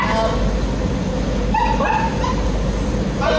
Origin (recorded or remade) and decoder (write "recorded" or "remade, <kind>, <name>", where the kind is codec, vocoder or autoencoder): recorded